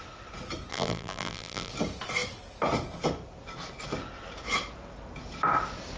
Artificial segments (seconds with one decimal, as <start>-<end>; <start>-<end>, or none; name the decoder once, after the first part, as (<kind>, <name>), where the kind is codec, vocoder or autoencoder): 0.7-1.7 (vocoder, BigVGAN v2)